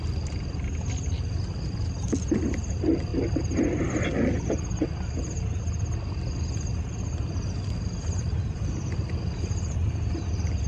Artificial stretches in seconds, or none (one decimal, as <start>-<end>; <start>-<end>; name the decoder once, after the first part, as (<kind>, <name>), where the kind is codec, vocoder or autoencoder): none